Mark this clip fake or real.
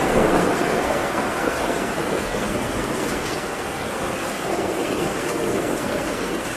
fake